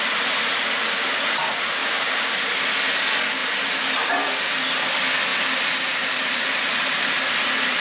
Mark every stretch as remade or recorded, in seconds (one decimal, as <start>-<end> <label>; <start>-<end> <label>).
0.0-1.8 recorded; 1.8-2.3 remade; 2.3-3.4 recorded; 3.4-4.5 remade; 4.5-5.3 recorded; 5.3-6.9 remade; 6.9-7.8 recorded